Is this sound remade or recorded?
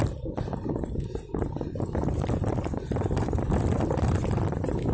recorded